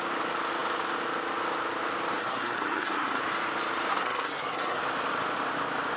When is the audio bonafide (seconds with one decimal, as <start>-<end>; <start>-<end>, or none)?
0.0-2.2; 3.2-3.9; 4.8-6.0